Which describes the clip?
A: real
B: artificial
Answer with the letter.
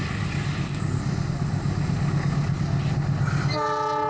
A